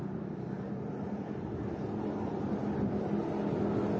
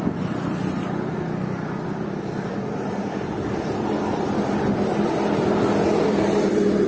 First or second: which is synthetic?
second